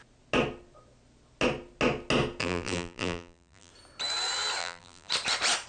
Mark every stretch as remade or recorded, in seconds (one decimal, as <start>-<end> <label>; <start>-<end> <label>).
0.0-2.4 recorded; 2.4-3.7 remade; 3.7-4.6 recorded; 4.6-5.1 remade; 5.1-5.7 recorded

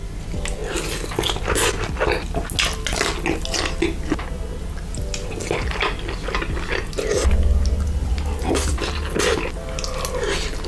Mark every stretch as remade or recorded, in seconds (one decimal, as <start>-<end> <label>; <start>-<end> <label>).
0.0-10.7 recorded